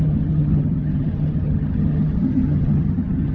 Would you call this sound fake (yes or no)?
yes